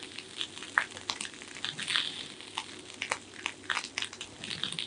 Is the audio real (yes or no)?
yes